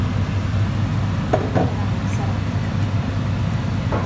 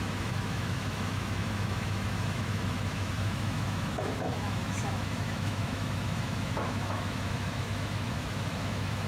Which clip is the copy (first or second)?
second